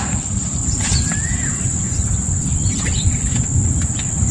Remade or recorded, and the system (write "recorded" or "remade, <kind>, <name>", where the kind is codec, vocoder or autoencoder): recorded